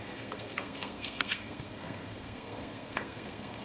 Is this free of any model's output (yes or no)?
no